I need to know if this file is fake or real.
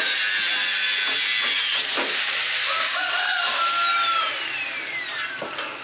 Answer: real